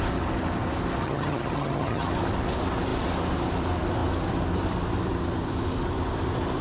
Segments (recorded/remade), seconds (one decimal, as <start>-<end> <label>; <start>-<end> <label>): 0.0-1.0 recorded; 1.0-2.1 remade; 2.1-6.6 recorded